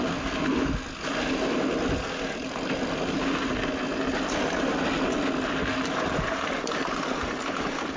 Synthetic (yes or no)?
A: no